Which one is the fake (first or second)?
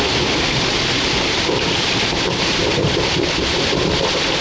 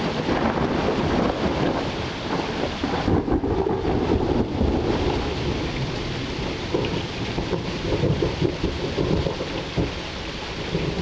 first